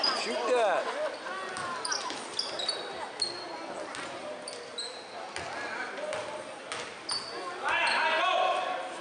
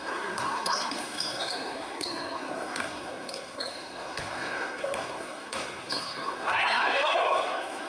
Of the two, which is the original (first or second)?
first